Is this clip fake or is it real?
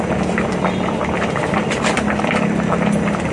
real